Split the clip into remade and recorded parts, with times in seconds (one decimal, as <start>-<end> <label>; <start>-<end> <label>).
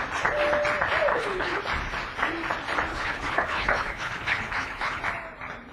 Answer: 0.0-1.1 recorded; 1.1-1.6 remade; 1.6-2.9 recorded; 2.9-5.0 remade; 5.0-5.7 recorded